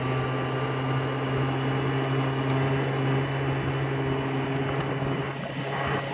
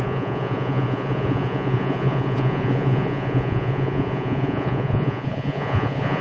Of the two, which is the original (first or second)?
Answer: first